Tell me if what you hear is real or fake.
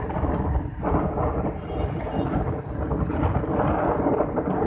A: real